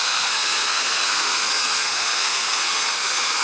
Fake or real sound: fake